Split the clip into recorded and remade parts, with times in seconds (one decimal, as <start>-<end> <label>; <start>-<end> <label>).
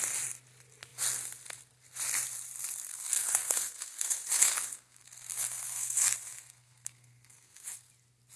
0.0-2.9 recorded; 2.9-7.9 remade; 7.9-8.4 recorded